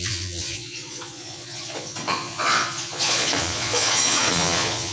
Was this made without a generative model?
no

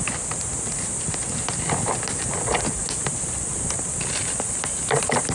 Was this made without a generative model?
yes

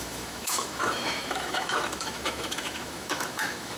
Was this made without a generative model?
no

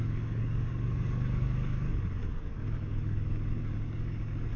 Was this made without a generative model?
no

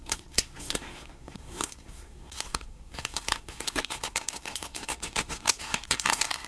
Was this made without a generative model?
no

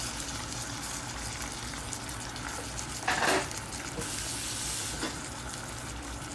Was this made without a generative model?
yes